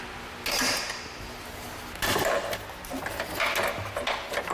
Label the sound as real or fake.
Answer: real